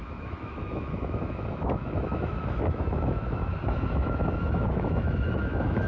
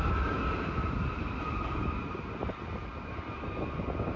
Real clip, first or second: second